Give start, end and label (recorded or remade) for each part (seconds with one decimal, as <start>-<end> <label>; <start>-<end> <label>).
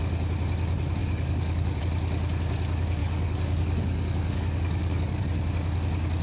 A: 0.0-1.0 recorded; 1.0-1.8 remade; 1.8-3.0 recorded; 3.0-5.2 remade; 5.2-6.2 recorded